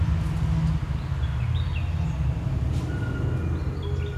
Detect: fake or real real